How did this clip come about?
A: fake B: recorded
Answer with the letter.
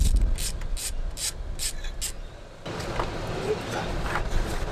B